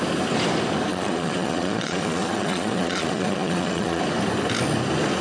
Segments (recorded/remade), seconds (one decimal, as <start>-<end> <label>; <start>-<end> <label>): 0.0-0.9 recorded; 0.9-4.0 remade; 4.0-5.2 recorded